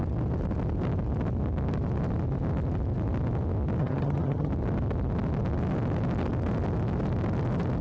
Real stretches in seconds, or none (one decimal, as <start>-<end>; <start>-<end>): 0.0-3.8; 4.5-7.8